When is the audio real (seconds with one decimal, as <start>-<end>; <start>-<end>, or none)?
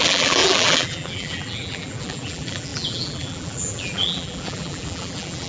none